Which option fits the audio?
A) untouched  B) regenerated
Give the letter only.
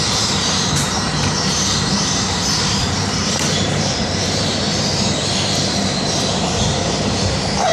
B